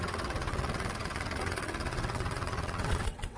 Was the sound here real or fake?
fake